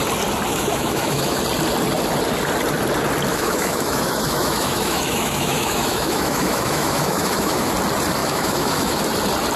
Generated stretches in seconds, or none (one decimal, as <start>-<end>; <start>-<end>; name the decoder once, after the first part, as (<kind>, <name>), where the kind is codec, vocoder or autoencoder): 0.5-1.4 (autoencoder, DAC-VAE); 3.3-7.7; 8.2-9.0